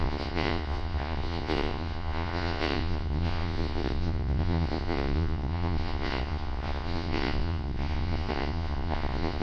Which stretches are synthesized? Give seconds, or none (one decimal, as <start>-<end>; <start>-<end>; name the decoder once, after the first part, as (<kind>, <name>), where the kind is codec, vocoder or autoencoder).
0.0-9.4 (vocoder, Vocos)